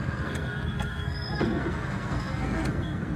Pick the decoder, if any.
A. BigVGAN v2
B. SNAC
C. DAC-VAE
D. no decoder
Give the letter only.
B